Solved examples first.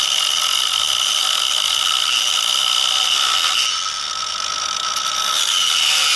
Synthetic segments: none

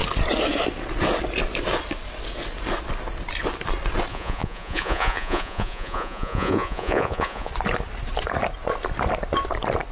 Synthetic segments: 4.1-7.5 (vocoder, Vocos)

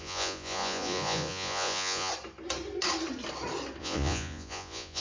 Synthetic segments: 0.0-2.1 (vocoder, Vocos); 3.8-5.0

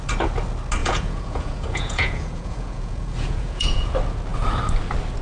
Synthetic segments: 0.8-3.9 (vocoder, Vocos)